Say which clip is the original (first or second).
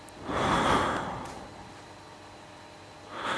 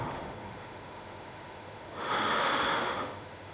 first